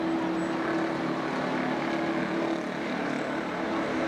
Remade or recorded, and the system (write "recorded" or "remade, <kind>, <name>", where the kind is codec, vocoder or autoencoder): recorded